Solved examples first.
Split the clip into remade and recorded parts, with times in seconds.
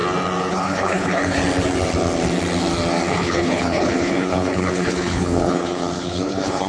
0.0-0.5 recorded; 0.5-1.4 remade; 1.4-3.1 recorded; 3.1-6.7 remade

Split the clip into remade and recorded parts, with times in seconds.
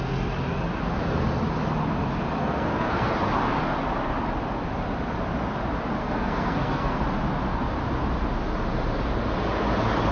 0.0-2.4 recorded; 2.4-3.1 remade; 3.1-6.0 recorded; 6.0-7.0 remade; 7.0-10.1 recorded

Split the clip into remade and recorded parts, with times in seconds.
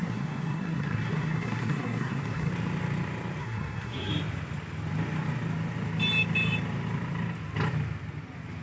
0.0-2.5 remade; 2.5-3.4 recorded; 3.4-4.1 remade; 4.1-8.6 recorded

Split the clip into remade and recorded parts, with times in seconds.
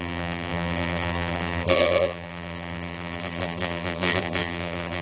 0.0-5.0 remade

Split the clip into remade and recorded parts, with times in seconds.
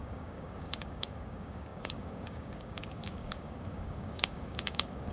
0.0-5.1 remade